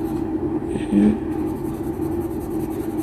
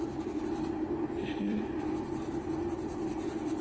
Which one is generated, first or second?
second